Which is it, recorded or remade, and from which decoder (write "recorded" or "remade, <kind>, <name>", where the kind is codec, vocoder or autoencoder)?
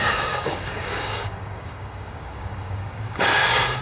remade, codec, DAC